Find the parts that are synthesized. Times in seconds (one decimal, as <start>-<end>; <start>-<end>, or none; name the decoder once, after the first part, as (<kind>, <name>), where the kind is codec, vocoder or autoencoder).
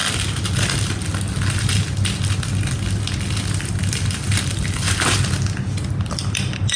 none